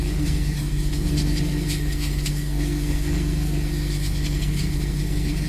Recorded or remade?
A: remade